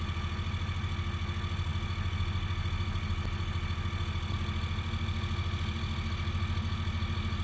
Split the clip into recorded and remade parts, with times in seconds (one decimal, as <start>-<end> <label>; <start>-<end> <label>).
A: 0.0-7.4 recorded